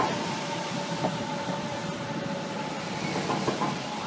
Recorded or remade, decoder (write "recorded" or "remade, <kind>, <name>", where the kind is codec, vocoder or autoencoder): recorded